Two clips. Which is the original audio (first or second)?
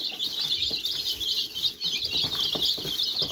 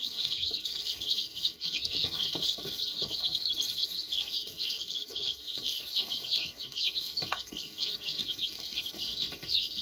first